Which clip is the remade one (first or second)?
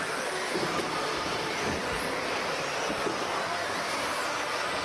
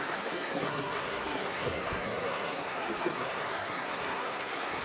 second